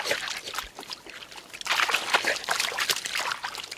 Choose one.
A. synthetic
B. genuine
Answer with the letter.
B